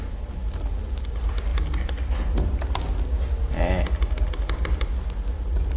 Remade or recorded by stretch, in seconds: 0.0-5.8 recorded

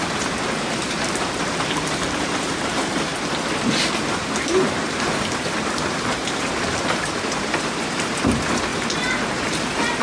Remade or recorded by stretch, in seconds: 0.0-3.1 remade; 3.1-4.1 recorded; 4.1-8.7 remade; 8.7-10.0 recorded